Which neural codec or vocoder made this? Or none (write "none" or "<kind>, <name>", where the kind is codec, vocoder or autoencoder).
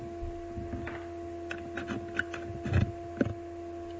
none